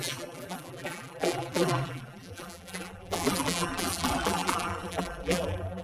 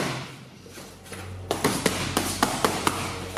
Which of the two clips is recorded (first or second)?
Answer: second